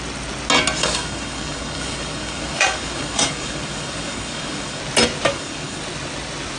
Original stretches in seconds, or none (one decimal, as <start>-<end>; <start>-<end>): 0.0-0.8; 4.8-5.3; 5.8-6.6